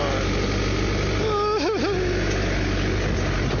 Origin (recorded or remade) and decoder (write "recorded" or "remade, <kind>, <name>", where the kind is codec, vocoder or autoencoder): recorded